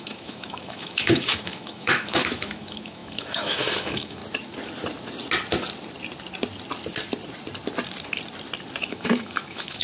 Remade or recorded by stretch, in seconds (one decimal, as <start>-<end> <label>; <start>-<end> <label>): 0.0-4.2 remade; 4.2-8.8 recorded; 8.8-9.8 remade